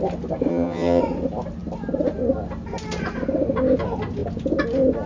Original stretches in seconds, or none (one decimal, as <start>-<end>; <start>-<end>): 0.0-0.5; 1.0-5.1